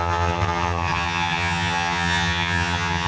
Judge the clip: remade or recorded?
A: remade